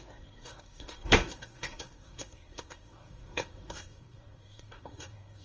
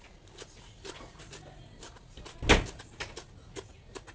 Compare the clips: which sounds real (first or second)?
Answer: second